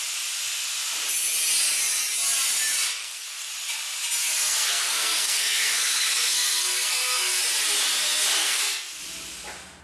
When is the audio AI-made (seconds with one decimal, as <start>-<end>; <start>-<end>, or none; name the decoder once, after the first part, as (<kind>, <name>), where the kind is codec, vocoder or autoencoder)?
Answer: 3.0-3.5 (codec, SNAC); 4.2-7.4; 8.4-9.0